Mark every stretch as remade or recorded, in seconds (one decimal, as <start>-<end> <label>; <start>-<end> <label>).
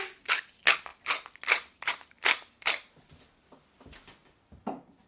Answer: 0.0-5.1 recorded